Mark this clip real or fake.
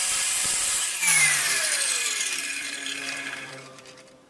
fake